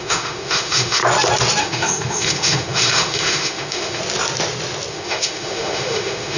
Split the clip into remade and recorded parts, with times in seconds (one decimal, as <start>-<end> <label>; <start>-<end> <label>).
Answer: 0.0-1.0 remade; 1.0-1.6 recorded; 1.6-4.0 remade; 4.0-4.9 recorded; 4.9-6.4 remade